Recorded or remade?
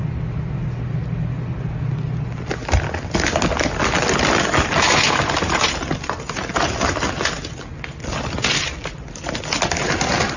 recorded